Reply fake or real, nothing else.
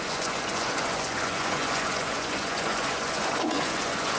fake